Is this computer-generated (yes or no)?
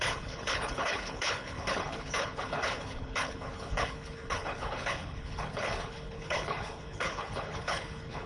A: yes